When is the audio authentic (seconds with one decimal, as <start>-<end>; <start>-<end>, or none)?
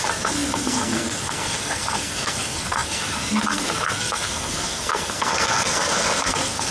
none